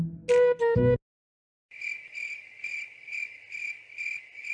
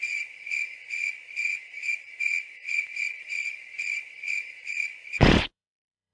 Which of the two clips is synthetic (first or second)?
second